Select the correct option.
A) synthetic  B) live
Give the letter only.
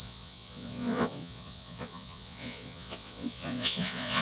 A